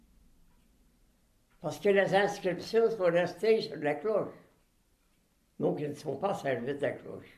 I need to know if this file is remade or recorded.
recorded